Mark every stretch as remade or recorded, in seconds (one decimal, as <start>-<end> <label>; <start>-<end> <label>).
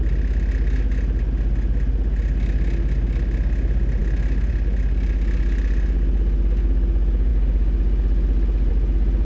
0.0-9.2 recorded